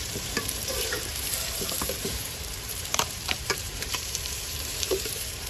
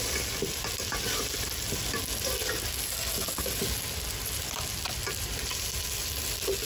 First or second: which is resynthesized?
first